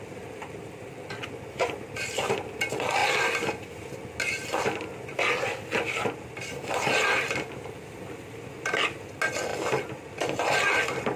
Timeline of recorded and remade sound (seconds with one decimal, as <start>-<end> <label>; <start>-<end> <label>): 0.0-11.2 recorded